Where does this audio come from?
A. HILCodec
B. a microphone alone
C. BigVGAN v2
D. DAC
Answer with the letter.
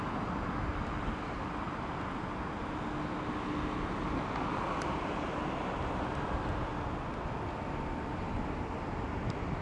B